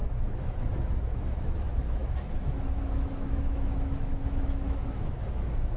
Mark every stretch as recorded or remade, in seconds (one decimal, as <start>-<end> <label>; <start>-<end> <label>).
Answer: 0.0-5.8 remade